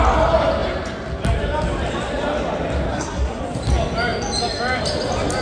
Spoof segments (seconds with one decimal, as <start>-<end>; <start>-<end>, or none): 2.9-3.4